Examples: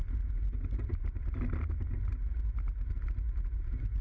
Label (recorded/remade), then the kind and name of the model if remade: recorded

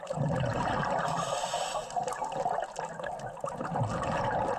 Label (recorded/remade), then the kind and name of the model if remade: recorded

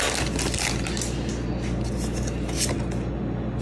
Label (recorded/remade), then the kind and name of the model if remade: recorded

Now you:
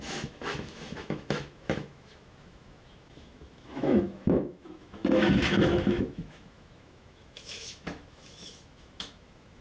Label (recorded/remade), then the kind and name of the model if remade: remade, autoencoder, DAC-VAE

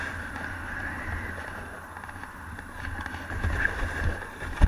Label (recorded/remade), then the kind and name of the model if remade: recorded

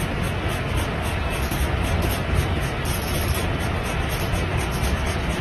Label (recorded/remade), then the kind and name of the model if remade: recorded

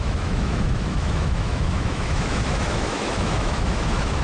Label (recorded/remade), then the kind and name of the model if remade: remade, autoencoder, DAC-VAE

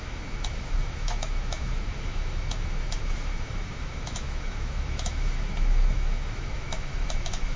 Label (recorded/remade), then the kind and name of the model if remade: remade, autoencoder, DAC-VAE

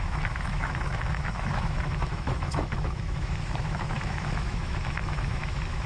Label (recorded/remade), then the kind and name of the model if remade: remade, autoencoder, DAC-VAE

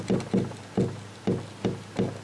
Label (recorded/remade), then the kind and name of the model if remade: recorded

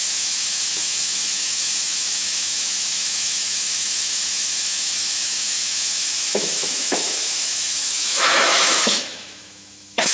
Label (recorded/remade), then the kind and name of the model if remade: remade, autoencoder, DAC-VAE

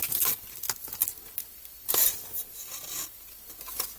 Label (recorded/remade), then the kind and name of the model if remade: recorded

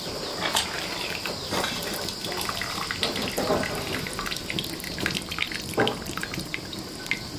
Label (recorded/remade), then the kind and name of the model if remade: recorded